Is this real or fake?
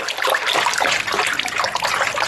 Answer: real